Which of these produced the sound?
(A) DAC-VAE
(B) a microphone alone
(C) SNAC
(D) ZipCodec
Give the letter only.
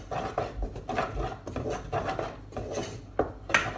B